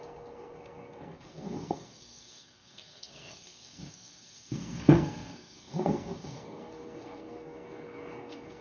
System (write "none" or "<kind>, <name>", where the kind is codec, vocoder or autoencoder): codec, SNAC